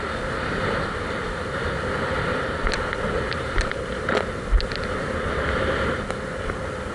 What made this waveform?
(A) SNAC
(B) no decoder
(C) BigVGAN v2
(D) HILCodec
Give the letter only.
B